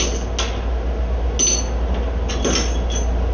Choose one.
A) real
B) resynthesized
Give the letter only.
A